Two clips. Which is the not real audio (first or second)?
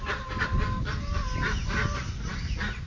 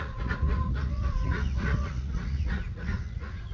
second